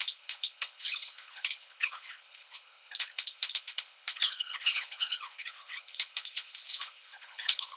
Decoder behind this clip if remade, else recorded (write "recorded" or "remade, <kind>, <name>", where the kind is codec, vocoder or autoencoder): remade, codec, HILCodec